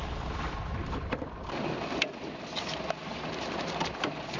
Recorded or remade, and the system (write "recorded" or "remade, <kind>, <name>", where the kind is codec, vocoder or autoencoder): recorded